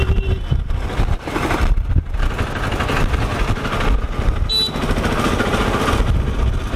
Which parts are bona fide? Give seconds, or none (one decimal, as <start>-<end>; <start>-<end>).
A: 0.0-6.8